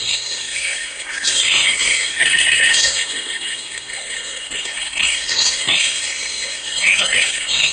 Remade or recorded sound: remade